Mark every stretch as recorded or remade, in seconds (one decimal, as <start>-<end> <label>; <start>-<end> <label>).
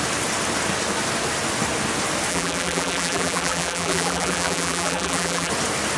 0.0-2.3 recorded; 2.3-5.5 remade; 5.5-6.0 recorded